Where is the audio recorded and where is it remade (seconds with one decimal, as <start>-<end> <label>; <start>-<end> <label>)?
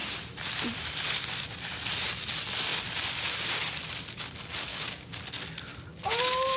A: 0.0-4.7 recorded; 4.7-5.2 remade; 5.2-5.9 recorded; 5.9-6.6 remade